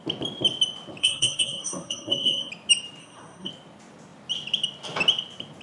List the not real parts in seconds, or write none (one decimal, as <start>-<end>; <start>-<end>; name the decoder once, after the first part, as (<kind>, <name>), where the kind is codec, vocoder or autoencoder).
1.0-2.5 (codec, SNAC); 3.0-3.5